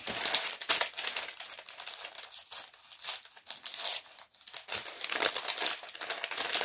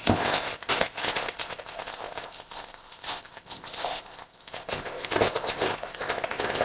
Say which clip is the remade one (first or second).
second